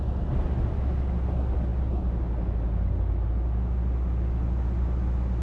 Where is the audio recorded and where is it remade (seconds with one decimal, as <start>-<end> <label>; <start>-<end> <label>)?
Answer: 0.0-5.4 recorded